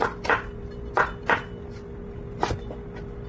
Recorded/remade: recorded